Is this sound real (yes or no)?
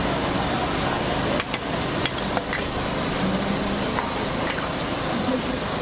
yes